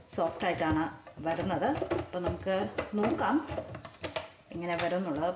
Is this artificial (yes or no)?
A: no